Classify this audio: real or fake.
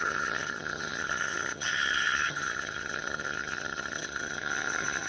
fake